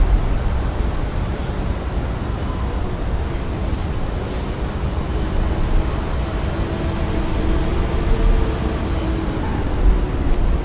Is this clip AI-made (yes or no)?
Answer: no